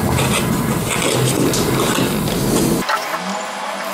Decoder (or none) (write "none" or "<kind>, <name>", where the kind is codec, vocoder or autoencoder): none